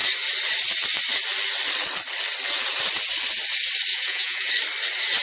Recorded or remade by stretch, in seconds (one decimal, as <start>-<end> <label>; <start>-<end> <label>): 0.0-3.9 recorded; 3.9-4.5 remade; 4.5-5.2 recorded